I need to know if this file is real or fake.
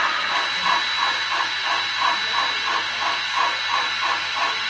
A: real